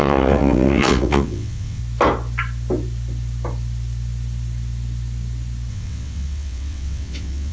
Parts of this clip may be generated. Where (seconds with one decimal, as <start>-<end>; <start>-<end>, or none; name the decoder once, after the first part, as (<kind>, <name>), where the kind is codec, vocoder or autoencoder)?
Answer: 0.0-1.8 (vocoder, WaveNeXt); 5.7-7.5